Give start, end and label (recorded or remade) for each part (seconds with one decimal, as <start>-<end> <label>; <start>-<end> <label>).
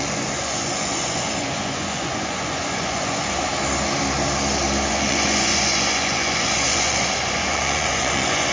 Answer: 0.0-3.5 remade; 3.5-4.9 recorded; 4.9-8.5 remade